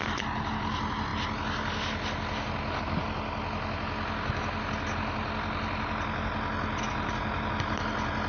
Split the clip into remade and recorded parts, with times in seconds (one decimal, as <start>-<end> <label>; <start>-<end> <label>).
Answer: 0.0-8.3 recorded